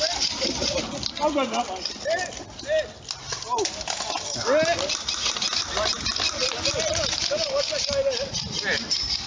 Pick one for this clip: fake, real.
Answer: real